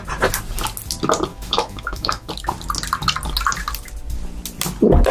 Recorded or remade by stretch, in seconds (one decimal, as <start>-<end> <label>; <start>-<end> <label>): 0.0-1.3 recorded; 1.3-2.3 remade; 2.3-5.1 recorded